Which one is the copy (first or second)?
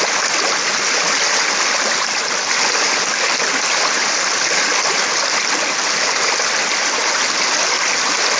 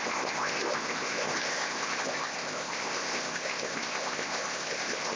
second